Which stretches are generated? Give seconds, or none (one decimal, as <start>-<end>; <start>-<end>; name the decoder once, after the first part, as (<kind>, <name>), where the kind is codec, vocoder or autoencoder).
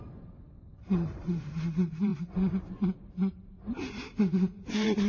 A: 0.0-5.1 (vocoder, BigVGAN v2)